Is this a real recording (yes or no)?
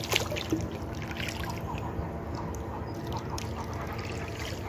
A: yes